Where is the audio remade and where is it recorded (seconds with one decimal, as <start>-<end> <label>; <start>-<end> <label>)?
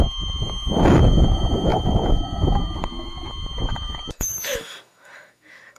0.0-5.8 remade